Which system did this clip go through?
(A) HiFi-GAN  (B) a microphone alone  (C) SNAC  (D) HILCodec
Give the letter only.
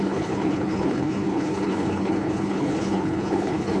D